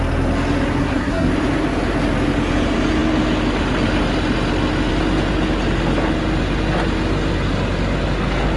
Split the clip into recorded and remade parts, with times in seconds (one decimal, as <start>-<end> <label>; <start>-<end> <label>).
0.0-0.8 recorded; 0.8-1.3 remade; 1.3-8.6 recorded